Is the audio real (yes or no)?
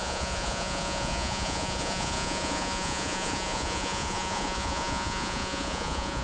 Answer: no